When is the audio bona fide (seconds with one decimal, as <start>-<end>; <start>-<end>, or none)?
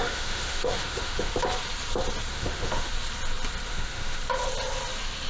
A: 1.3-2.3; 2.9-3.7; 4.2-5.3